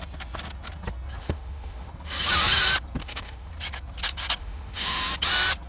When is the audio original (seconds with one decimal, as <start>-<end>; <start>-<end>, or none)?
0.0-1.2; 1.9-3.0; 3.5-4.4; 5.0-5.7